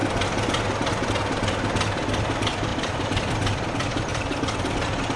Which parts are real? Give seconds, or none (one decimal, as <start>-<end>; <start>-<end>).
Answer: 0.0-1.1; 4.1-5.2